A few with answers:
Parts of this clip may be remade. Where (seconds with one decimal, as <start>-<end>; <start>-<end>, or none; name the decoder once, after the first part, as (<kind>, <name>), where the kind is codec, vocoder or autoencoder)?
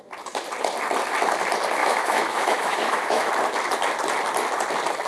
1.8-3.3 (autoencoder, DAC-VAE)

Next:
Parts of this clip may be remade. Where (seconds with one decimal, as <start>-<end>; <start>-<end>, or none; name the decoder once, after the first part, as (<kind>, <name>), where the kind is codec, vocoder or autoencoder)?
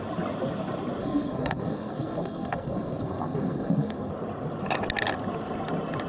1.0-4.1 (codec, SNAC)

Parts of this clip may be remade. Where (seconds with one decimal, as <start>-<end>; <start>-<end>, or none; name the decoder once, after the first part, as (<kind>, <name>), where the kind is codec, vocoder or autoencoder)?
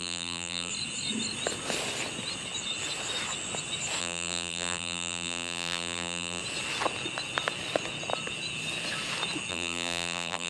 0.0-0.7 (vocoder, BigVGAN v2); 4.0-6.4; 9.5-10.5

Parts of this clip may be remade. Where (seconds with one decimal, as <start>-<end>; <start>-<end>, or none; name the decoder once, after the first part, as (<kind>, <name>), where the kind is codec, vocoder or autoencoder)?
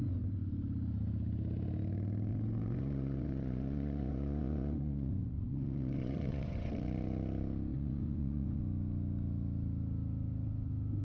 2.3-6.7 (vocoder, Vocos); 7.7-8.6